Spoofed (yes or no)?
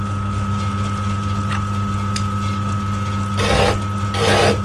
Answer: no